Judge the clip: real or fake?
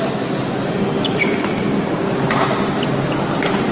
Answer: real